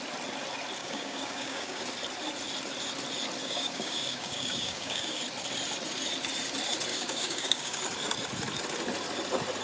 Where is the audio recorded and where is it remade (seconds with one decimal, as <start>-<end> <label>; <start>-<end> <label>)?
0.0-0.8 recorded; 0.8-1.8 remade; 1.8-3.4 recorded; 3.4-5.2 remade; 5.2-6.9 recorded; 6.9-7.8 remade; 7.8-9.6 recorded